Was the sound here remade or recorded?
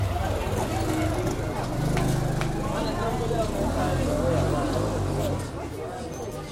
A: recorded